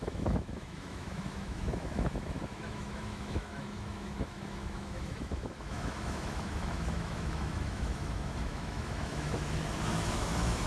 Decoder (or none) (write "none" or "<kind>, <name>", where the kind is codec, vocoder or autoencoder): autoencoder, DAC-VAE